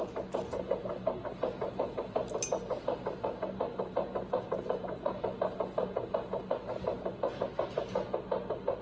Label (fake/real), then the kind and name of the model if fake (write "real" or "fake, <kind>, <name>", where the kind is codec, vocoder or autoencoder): real